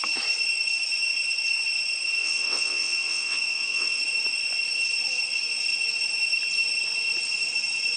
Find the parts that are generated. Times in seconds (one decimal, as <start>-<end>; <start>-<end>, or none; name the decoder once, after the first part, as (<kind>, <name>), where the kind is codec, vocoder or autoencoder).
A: 2.2-4.0 (vocoder, WaveNeXt)